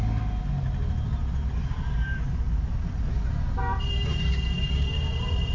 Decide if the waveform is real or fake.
real